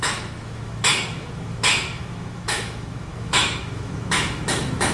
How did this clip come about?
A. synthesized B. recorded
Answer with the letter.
A